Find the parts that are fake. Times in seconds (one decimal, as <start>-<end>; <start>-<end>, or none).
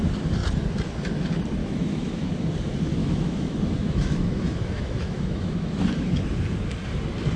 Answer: 1.6-2.3; 3.0-6.2